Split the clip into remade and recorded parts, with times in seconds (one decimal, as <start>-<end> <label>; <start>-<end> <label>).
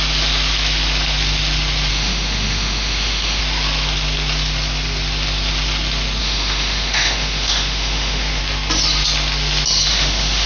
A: 0.0-1.9 recorded; 1.9-3.4 remade; 3.4-6.2 recorded; 6.2-8.4 remade; 8.4-9.9 recorded; 9.9-10.5 remade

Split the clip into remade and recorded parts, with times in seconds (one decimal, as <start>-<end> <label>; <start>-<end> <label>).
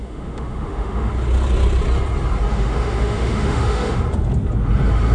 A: 0.0-1.1 remade; 1.1-2.5 recorded; 2.5-4.0 remade; 4.0-5.1 recorded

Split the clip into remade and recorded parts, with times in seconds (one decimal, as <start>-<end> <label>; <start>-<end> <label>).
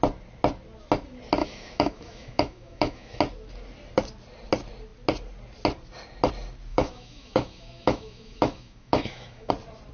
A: 0.0-1.4 recorded; 1.4-3.2 remade; 3.2-6.7 recorded; 6.7-9.5 remade; 9.5-9.9 recorded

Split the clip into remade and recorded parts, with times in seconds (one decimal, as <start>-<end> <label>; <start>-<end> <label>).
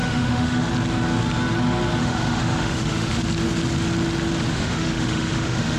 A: 0.0-0.7 remade; 0.7-2.0 recorded; 2.0-3.1 remade; 3.1-4.5 recorded; 4.5-5.8 remade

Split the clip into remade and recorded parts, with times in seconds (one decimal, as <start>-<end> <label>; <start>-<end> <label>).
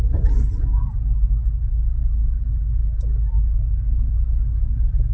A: 0.0-5.1 recorded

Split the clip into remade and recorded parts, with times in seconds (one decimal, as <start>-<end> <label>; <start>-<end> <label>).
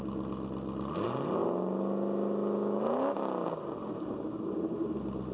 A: 0.0-5.3 recorded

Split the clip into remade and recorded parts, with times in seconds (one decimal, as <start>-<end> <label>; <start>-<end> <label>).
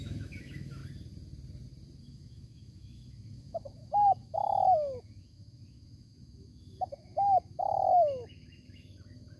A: 0.0-0.8 remade; 0.8-2.0 recorded; 2.0-9.4 remade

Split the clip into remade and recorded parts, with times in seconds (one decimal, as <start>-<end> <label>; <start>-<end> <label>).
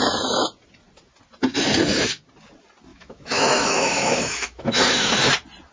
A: 0.0-2.9 recorded; 2.9-5.1 remade; 5.1-5.7 recorded